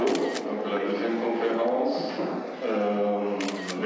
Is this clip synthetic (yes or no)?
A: no